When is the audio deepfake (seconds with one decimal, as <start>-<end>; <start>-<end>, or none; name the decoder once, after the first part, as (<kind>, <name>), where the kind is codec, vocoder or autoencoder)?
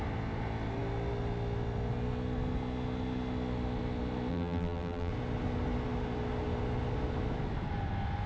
4.3-5.1 (vocoder, BigVGAN v2)